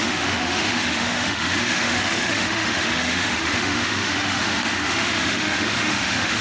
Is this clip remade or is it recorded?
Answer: remade